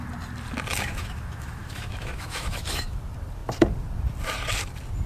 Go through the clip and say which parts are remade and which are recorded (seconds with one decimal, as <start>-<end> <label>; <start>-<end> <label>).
0.0-0.7 recorded; 0.7-3.0 remade; 3.0-5.1 recorded